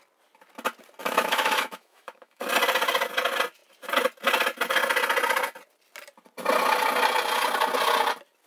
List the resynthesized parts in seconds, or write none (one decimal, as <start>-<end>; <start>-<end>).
1.0-2.4